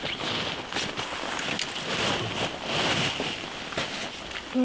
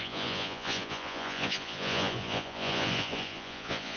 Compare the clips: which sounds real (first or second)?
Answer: first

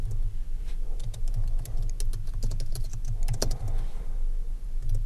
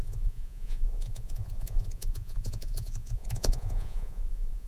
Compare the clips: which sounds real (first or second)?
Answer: first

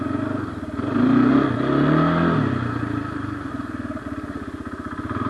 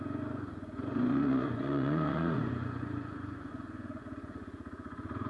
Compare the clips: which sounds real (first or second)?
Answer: first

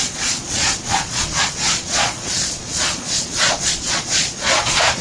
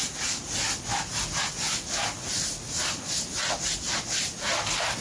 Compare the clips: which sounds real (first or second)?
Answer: second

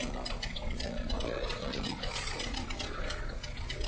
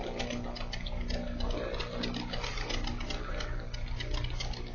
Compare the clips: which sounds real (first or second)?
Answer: second